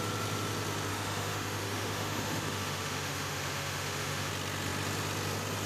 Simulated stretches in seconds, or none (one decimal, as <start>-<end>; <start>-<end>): 0.9-4.3